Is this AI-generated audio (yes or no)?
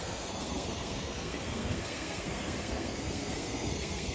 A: yes